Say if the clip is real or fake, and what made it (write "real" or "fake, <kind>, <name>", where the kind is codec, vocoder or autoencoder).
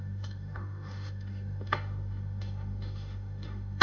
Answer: fake, autoencoder, DAC-VAE